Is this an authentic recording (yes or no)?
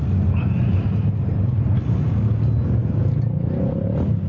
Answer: yes